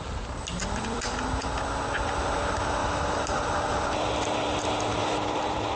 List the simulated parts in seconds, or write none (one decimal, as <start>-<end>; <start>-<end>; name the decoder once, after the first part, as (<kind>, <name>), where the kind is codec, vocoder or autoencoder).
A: 0.6-1.4 (vocoder, BigVGAN v2); 2.8-5.8